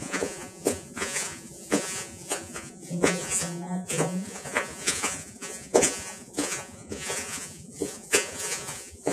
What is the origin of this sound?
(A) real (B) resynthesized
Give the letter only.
B